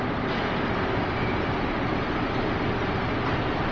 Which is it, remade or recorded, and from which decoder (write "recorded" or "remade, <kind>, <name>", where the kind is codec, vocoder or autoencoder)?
remade, vocoder, BigVGAN v2